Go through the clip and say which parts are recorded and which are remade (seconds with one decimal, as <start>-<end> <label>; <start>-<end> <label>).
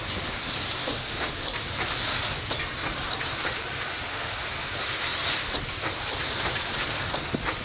0.0-0.8 recorded; 0.8-1.3 remade; 1.3-3.9 recorded; 3.9-4.5 remade; 4.5-7.6 recorded